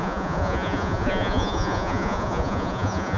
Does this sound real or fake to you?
fake